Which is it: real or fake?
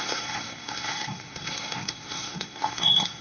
fake